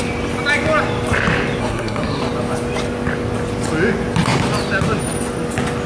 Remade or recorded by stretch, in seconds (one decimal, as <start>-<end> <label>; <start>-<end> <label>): 0.0-1.6 recorded; 1.6-2.2 remade; 2.2-5.9 recorded